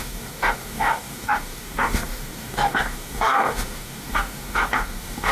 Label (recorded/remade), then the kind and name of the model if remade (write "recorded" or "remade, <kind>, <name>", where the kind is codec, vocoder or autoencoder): remade, codec, DAC